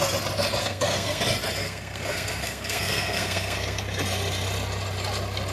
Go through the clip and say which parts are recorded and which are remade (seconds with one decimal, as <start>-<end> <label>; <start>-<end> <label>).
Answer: 0.0-0.6 recorded; 0.6-1.2 remade; 1.2-1.6 recorded; 1.6-3.8 remade; 3.8-5.5 recorded